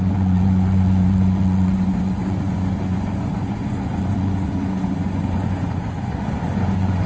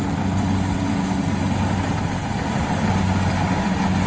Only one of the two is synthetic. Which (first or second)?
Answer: first